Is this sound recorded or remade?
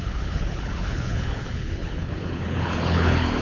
remade